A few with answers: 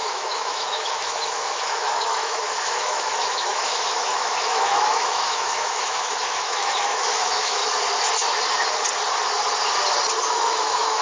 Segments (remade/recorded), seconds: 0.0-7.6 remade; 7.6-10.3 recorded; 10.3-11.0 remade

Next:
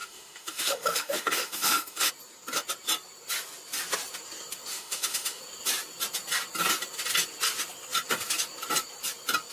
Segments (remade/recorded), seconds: 0.0-2.1 remade; 2.1-4.7 recorded; 4.7-5.4 remade; 5.4-9.5 recorded

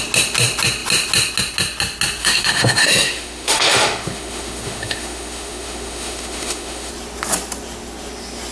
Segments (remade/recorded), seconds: 0.0-2.2 recorded; 2.2-6.9 remade; 6.9-8.5 recorded

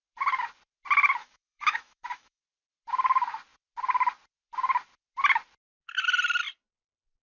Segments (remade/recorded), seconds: 0.0-1.2 recorded; 1.2-2.4 remade; 2.4-7.2 recorded

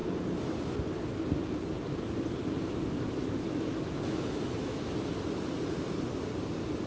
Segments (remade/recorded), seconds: 0.0-3.0 recorded; 3.0-4.9 remade; 4.9-6.9 recorded